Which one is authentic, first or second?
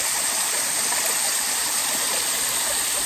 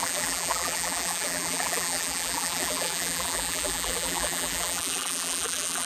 first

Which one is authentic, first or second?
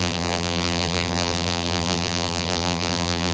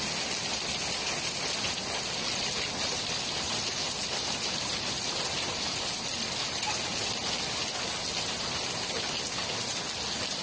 second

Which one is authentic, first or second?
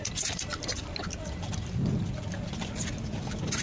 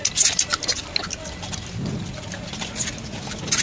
second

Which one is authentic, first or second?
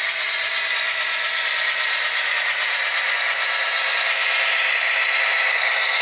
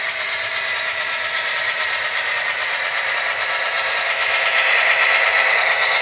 first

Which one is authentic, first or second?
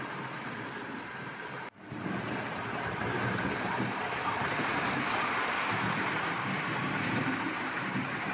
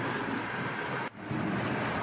second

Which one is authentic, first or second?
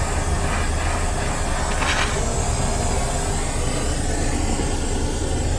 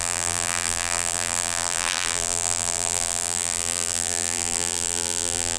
first